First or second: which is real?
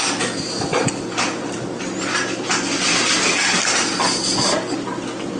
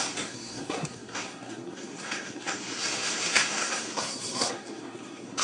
first